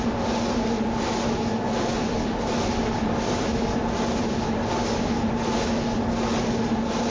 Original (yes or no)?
yes